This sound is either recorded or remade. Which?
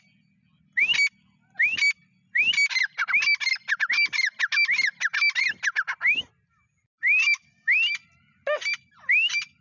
recorded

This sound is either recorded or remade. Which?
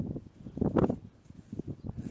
remade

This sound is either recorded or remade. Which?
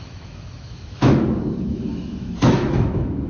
remade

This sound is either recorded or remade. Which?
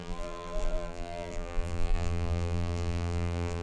remade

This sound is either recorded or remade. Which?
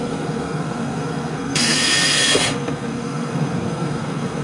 remade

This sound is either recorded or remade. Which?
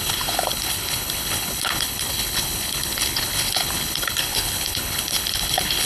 remade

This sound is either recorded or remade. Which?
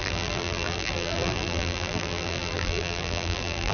remade